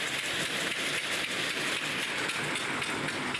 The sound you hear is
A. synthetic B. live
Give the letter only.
B